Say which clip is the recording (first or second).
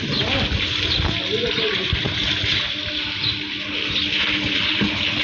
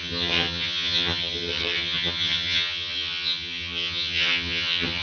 first